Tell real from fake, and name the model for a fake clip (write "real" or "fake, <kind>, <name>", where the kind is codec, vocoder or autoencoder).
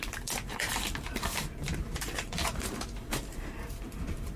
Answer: fake, vocoder, BigVGAN v2